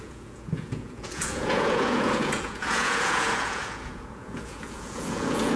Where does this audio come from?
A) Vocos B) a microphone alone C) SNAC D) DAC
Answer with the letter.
A